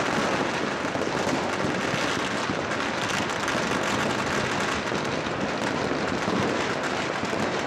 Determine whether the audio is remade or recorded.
recorded